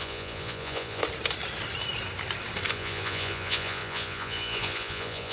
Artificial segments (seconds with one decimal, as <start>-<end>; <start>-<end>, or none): 0.0-1.0; 2.7-5.3